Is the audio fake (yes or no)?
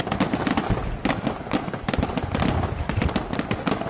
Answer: no